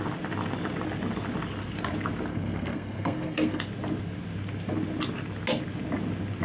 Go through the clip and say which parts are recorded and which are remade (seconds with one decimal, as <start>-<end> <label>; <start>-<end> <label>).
0.0-2.3 recorded; 2.3-3.6 remade; 3.6-6.4 recorded